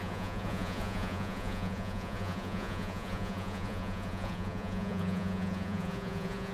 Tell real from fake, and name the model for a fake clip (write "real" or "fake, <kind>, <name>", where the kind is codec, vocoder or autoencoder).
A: fake, vocoder, Vocos